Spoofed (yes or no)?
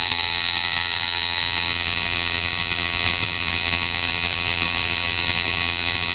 yes